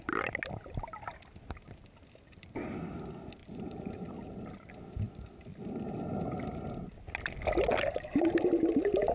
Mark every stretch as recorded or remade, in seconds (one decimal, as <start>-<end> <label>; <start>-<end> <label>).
0.0-3.4 recorded; 3.4-4.1 remade; 4.1-9.1 recorded

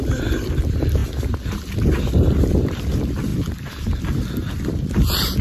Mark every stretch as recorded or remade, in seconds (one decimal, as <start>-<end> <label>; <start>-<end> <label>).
0.0-5.4 recorded

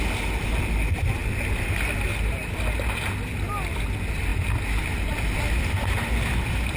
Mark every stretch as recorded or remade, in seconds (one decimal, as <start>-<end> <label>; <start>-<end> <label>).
0.0-4.3 recorded; 4.3-5.7 remade; 5.7-6.8 recorded

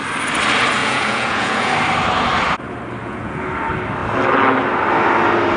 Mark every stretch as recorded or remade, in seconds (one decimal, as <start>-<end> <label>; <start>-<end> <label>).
0.0-0.8 recorded; 0.8-1.7 remade; 1.7-3.0 recorded; 3.0-3.5 remade; 3.5-5.6 recorded

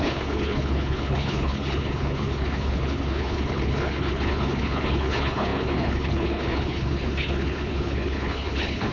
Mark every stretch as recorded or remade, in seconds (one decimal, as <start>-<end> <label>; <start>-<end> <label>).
0.0-8.9 remade